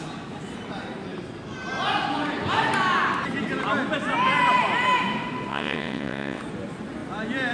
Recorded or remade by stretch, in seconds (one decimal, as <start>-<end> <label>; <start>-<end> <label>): 0.0-5.5 recorded; 5.5-6.4 remade; 6.4-7.5 recorded